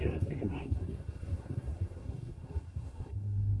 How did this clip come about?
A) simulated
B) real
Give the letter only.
A